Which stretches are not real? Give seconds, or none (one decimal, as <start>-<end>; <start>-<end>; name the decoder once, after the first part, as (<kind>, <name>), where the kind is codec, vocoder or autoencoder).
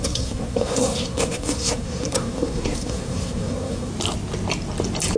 0.0-3.9 (codec, SNAC)